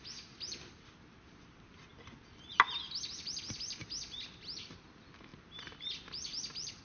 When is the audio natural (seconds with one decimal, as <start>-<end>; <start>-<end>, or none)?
0.0-6.8